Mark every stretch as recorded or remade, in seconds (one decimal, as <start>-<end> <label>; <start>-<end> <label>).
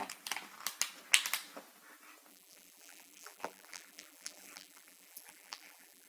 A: 0.0-2.3 recorded; 2.3-6.1 remade